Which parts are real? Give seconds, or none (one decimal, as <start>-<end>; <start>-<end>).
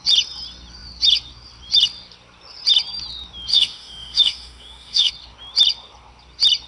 0.0-3.5; 5.1-6.7